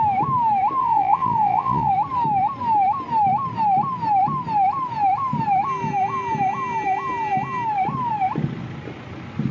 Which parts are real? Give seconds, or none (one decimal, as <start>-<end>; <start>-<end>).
0.0-0.8; 1.9-9.5